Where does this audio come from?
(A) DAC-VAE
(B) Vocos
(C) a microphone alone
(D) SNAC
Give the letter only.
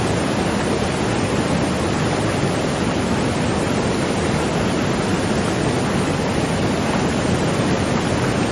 C